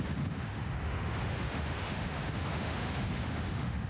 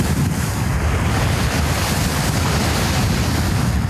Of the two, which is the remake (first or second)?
first